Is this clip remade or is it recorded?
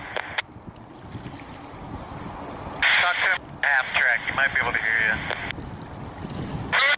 recorded